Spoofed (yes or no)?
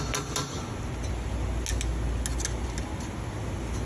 no